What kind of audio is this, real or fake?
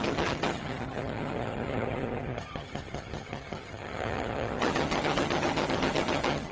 fake